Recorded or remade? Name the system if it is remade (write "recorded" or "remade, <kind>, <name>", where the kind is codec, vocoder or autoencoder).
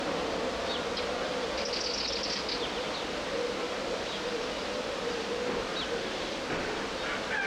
recorded